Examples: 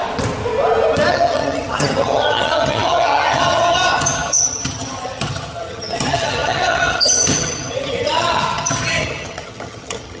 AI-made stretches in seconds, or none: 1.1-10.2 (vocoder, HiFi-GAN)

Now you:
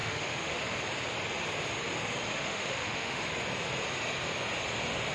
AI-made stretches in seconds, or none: 0.0-0.6 (autoencoder, DAC-VAE); 2.3-3.2

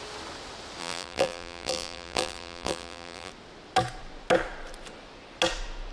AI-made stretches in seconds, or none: 0.8-3.3 (vocoder, BigVGAN v2)

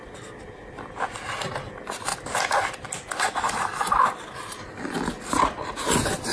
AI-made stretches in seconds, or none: none

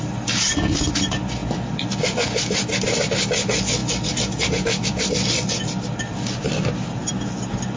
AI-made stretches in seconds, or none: none

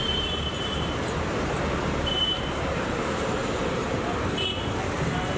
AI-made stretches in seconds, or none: 0.0-3.8 (vocoder, BigVGAN v2); 4.9-5.4

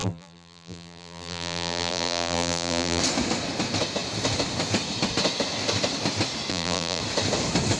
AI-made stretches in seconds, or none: 0.0-3.0 (vocoder, BigVGAN v2); 6.5-7.0